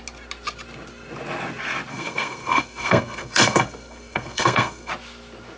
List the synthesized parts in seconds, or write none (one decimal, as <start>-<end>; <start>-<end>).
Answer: 1.9-4.9